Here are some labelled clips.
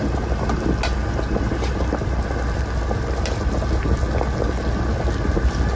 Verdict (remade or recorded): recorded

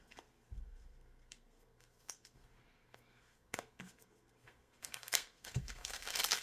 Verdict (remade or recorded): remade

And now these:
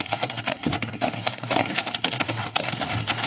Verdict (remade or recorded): remade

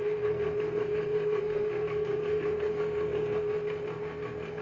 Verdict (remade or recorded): remade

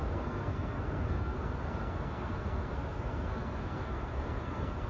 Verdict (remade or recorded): remade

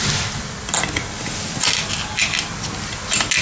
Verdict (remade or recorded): recorded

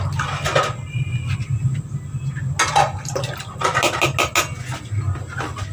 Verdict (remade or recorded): recorded